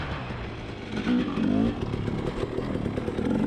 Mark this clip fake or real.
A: real